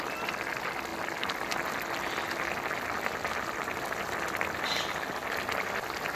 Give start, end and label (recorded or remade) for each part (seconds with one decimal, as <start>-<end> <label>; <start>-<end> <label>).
0.0-6.2 recorded